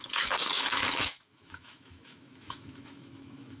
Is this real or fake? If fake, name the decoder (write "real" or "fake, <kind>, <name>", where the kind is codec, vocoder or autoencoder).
fake, autoencoder, DAC-VAE